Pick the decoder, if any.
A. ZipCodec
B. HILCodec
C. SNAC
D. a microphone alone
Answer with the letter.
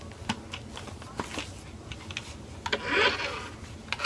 D